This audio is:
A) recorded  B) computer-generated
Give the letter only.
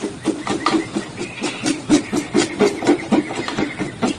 A